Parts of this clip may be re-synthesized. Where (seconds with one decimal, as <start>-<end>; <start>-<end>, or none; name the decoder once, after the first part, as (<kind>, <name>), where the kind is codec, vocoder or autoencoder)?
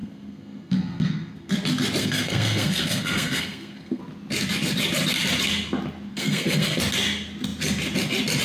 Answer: 0.0-1.5 (codec, SNAC); 2.0-4.0; 6.1-6.8